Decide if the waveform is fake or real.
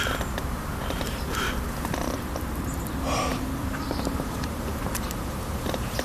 fake